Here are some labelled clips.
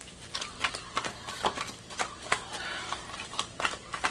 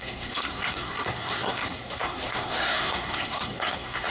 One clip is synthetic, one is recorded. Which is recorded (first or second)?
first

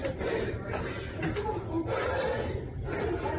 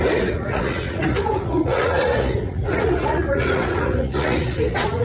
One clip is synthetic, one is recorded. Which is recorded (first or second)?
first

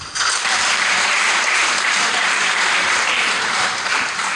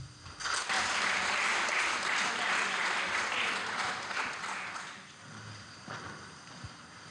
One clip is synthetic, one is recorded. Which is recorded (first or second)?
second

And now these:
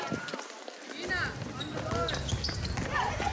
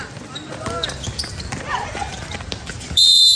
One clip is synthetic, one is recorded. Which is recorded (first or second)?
first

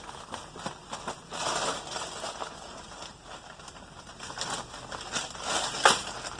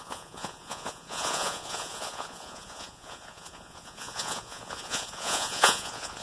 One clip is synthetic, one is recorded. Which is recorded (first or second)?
first